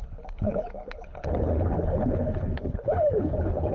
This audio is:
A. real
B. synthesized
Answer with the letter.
B